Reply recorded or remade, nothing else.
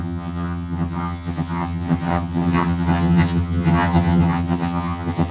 remade